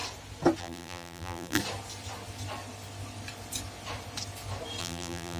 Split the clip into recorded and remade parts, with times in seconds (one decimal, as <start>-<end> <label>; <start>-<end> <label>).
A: 0.0-0.6 recorded; 0.6-1.6 remade; 1.6-4.8 recorded; 4.8-5.4 remade